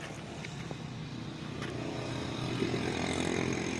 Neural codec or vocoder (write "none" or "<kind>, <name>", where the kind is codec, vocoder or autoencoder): none